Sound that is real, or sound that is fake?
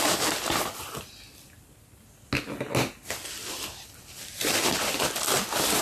real